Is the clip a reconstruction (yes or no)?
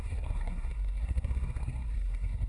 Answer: yes